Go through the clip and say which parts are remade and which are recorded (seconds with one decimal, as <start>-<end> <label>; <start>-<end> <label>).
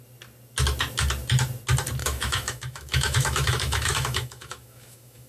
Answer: 0.0-2.0 recorded; 2.0-5.3 remade